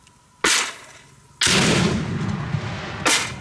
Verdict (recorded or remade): recorded